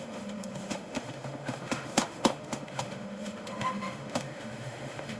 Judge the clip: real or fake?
fake